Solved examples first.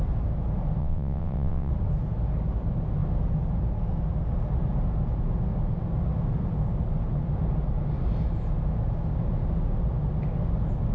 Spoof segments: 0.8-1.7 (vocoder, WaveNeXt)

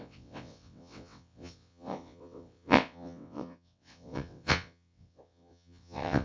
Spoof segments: 0.0-6.2 (vocoder, WaveNeXt)

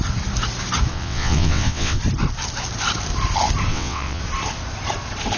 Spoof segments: 0.9-2.0 (vocoder, WaveNeXt); 3.7-4.2